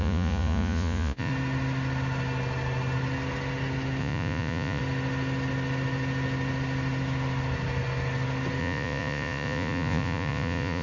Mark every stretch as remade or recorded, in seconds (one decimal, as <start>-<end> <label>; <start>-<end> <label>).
0.0-1.3 remade; 1.3-4.0 recorded; 4.0-4.8 remade; 4.8-8.6 recorded; 8.6-10.8 remade